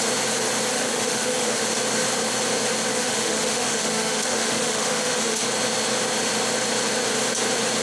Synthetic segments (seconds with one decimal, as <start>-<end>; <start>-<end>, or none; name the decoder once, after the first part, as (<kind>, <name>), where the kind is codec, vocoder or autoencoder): 0.7-1.6 (autoencoder, DAC-VAE); 2.9-5.4